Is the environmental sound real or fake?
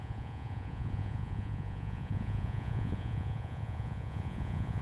fake